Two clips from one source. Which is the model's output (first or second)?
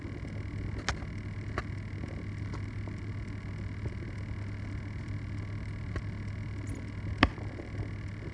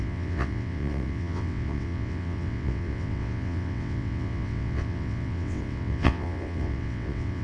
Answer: second